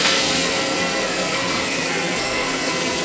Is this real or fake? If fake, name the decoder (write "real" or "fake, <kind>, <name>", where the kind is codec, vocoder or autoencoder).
fake, codec, SNAC